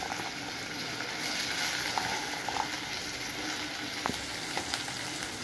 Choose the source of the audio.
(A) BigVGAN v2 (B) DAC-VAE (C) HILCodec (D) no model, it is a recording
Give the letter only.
D